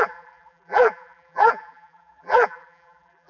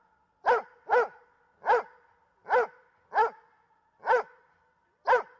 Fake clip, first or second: first